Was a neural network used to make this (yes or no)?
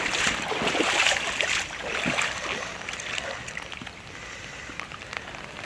yes